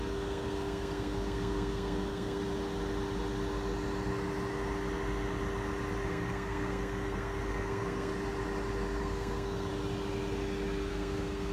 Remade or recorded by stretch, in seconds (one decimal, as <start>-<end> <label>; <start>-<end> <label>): 0.0-2.4 remade; 2.4-6.1 recorded; 6.1-8.1 remade; 8.1-9.0 recorded; 9.0-9.7 remade; 9.7-10.9 recorded; 10.9-11.5 remade

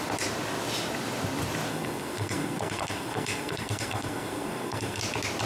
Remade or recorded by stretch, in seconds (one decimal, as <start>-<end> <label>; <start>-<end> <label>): 0.0-1.7 recorded; 1.7-5.0 remade; 5.0-5.5 recorded